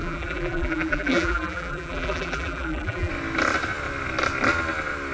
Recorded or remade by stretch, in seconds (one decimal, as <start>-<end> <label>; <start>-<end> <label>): 0.0-3.1 remade; 3.1-5.1 recorded

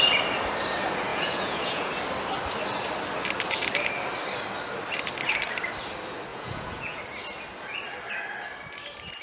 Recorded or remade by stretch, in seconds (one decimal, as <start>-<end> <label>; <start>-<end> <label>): 0.0-1.1 recorded; 1.1-1.9 remade; 1.9-6.3 recorded; 6.3-7.0 remade; 7.0-9.2 recorded